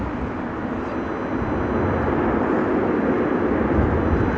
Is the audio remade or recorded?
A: recorded